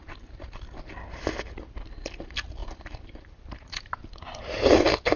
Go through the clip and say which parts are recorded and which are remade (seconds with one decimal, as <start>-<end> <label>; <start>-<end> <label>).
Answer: 0.0-0.9 remade; 0.9-2.6 recorded; 2.6-4.4 remade; 4.4-5.2 recorded